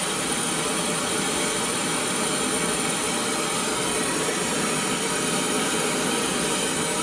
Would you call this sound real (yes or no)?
no